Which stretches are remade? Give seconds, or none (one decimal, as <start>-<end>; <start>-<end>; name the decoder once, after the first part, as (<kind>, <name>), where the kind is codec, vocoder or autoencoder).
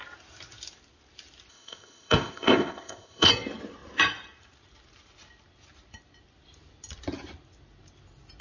1.5-3.3 (codec, ZipCodec)